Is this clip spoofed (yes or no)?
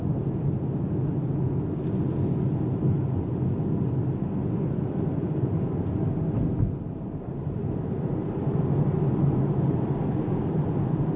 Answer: no